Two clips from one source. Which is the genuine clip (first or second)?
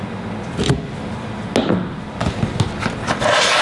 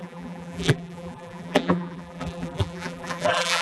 first